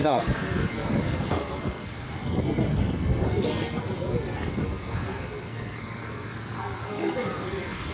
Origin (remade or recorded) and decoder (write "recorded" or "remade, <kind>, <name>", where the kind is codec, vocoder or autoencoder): remade, codec, SNAC